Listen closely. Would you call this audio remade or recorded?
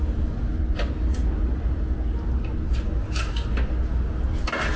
recorded